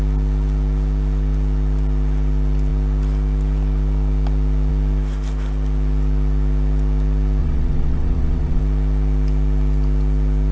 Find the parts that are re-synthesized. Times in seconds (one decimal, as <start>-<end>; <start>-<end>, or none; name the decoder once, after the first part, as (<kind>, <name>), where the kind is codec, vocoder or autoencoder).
7.4-8.6 (vocoder, WaveNeXt)